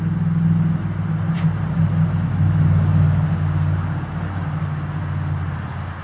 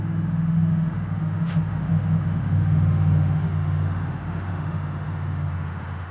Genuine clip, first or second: first